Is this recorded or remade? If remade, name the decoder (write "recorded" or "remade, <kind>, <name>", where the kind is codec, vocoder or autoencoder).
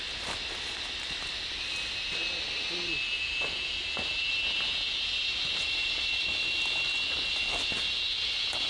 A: recorded